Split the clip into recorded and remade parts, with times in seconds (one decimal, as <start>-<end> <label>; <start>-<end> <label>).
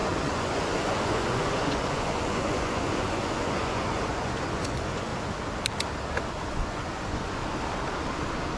0.0-5.1 remade; 5.1-6.2 recorded; 6.2-7.4 remade; 7.4-8.6 recorded